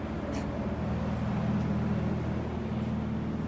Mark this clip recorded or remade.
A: recorded